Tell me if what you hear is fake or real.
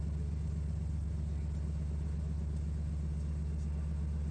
real